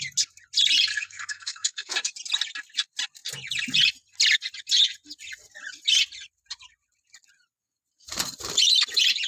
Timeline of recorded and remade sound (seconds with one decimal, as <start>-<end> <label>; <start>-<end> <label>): 0.0-0.9 recorded; 0.9-1.9 remade; 1.9-9.3 recorded